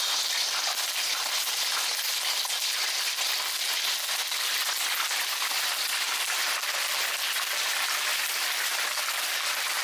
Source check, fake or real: real